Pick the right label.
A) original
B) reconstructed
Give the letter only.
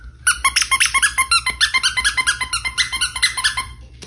A